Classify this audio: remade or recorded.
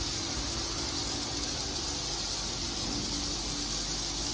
recorded